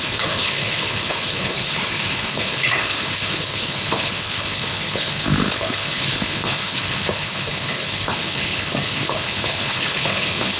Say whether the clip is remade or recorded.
remade